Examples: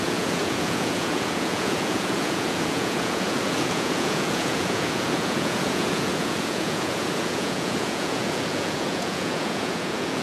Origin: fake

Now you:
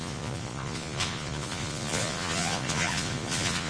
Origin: fake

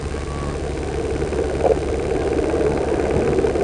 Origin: real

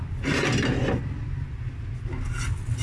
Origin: real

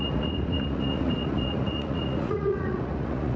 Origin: fake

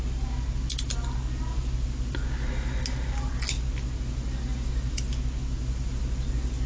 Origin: real